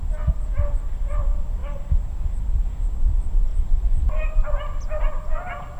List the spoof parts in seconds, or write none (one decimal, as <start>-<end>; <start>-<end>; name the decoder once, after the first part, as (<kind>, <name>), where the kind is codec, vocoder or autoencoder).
none